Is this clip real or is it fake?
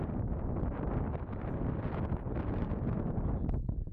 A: real